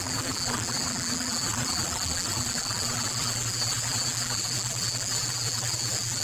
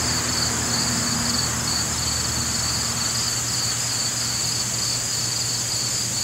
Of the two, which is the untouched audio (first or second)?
second